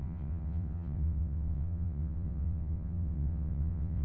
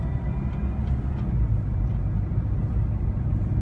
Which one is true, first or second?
second